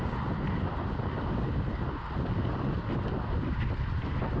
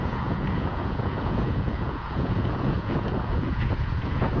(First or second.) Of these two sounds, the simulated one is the second